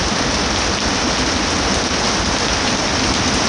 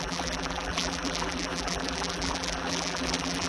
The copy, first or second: second